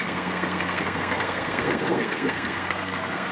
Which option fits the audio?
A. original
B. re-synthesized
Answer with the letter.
B